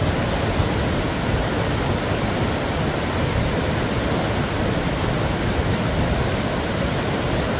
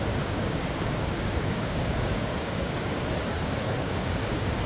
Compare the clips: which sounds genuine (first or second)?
first